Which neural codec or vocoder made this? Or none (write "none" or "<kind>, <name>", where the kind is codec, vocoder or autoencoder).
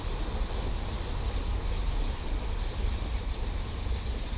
none